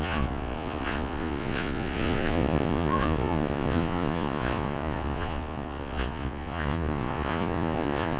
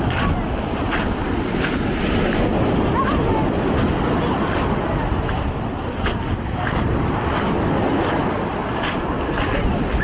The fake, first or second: first